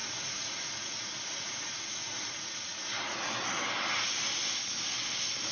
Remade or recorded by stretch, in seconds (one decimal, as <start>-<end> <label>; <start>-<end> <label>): 0.0-3.3 remade; 3.3-5.5 recorded